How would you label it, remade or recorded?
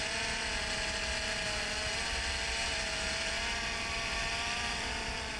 recorded